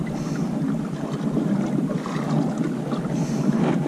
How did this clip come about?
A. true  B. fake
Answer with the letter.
A